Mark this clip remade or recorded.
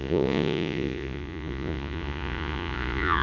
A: remade